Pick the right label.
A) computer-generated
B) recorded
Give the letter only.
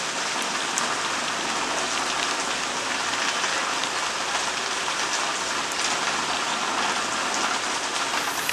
B